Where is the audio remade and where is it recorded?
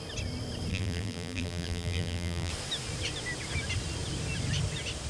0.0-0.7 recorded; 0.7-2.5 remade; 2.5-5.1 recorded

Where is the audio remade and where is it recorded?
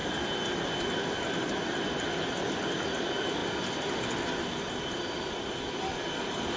0.0-6.6 recorded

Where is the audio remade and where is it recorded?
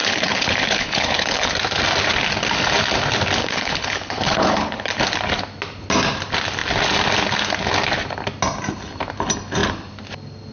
0.0-1.5 remade; 1.5-3.4 recorded; 3.4-5.0 remade; 5.0-10.5 recorded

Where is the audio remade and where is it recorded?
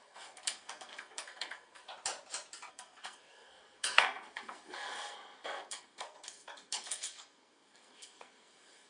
0.0-1.9 remade; 1.9-2.7 recorded; 2.7-8.9 remade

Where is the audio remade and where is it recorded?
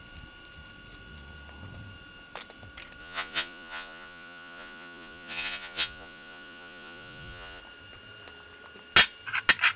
0.0-3.0 recorded; 3.0-7.6 remade; 7.6-9.8 recorded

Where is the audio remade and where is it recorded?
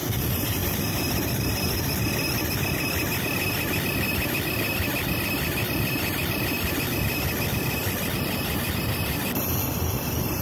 0.0-10.4 recorded